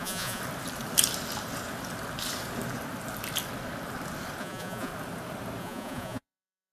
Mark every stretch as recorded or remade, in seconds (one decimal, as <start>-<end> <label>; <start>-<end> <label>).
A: 0.0-0.4 remade; 0.4-4.4 recorded; 4.4-4.9 remade; 4.9-5.6 recorded; 5.6-6.7 remade